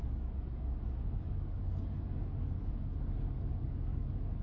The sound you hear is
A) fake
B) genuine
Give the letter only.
A